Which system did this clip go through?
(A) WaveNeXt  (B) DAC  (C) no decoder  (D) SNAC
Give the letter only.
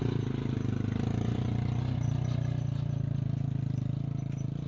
C